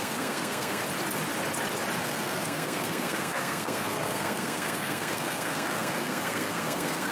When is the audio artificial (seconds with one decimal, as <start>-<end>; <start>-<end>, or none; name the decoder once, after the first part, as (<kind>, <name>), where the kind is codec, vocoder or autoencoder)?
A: 0.0-0.8 (codec, SNAC); 2.0-7.1